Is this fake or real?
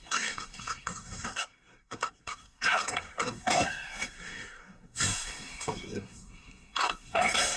fake